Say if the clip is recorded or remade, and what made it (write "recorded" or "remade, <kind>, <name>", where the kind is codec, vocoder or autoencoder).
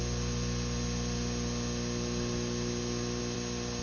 recorded